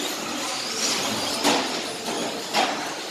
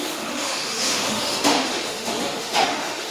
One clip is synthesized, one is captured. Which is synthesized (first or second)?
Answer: second